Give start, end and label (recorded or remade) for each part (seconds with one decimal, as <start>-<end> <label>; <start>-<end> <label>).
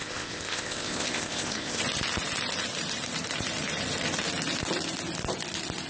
0.0-1.8 remade; 1.8-5.9 recorded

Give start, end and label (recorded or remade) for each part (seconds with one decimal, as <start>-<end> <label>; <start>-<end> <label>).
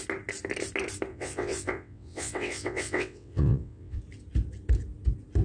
0.0-1.1 recorded; 1.1-4.0 remade; 4.0-5.4 recorded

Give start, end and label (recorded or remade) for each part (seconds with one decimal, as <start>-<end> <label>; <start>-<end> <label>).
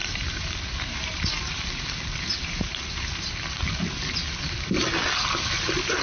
0.0-3.6 remade; 3.6-6.0 recorded